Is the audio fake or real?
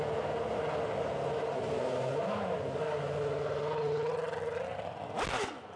real